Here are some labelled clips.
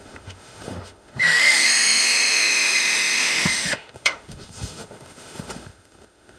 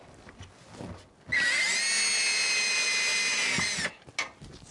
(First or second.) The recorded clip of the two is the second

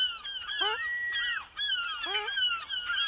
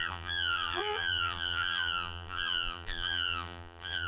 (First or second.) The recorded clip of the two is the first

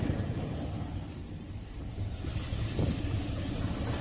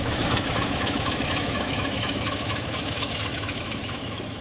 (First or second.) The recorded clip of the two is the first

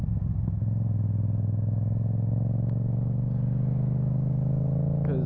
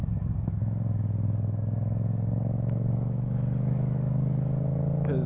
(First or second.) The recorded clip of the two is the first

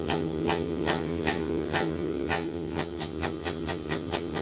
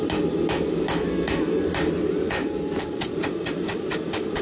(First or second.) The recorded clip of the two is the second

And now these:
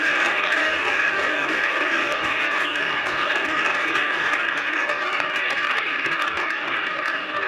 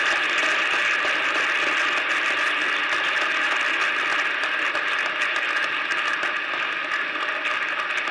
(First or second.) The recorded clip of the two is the second